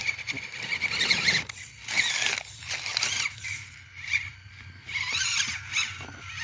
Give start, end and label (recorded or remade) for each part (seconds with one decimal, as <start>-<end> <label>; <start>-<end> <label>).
0.0-2.9 recorded; 2.9-5.3 remade; 5.3-6.4 recorded

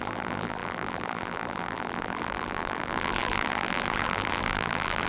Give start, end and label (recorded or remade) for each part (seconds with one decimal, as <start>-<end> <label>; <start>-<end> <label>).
0.0-5.1 remade

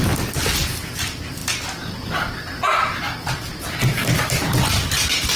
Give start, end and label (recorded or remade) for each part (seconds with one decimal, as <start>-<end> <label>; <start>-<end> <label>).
0.0-5.4 recorded

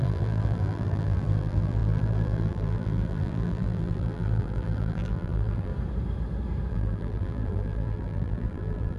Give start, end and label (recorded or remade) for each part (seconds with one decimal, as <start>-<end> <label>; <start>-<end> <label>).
0.0-5.7 remade; 5.7-6.7 recorded; 6.7-9.0 remade

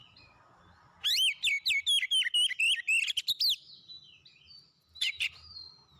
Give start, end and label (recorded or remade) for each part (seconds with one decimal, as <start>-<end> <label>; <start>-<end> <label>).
0.0-4.7 recorded; 4.7-6.0 remade

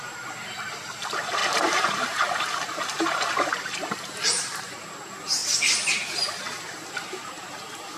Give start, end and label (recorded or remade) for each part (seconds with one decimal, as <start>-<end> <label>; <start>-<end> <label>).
0.0-5.4 remade; 5.4-6.1 recorded; 6.1-8.0 remade

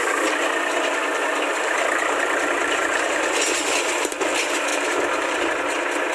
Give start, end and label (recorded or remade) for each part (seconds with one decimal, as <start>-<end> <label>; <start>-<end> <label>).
0.0-1.5 recorded; 1.5-3.2 remade; 3.2-4.7 recorded; 4.7-5.4 remade; 5.4-6.1 recorded